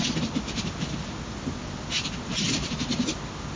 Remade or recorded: recorded